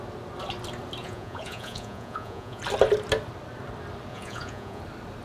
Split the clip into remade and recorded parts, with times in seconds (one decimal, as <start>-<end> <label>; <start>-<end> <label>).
0.0-1.0 recorded; 1.0-2.6 remade; 2.6-4.1 recorded; 4.1-4.8 remade; 4.8-5.2 recorded